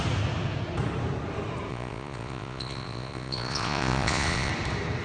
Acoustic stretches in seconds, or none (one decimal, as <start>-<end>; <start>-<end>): 0.0-1.7; 4.5-5.0